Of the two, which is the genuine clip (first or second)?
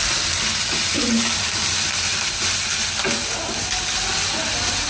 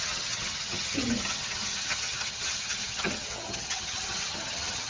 first